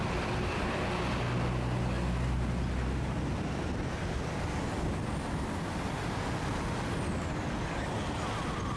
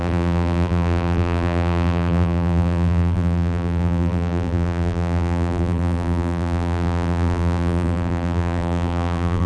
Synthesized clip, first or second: second